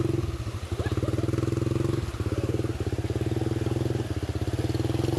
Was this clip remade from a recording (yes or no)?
no